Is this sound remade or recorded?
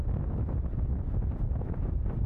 recorded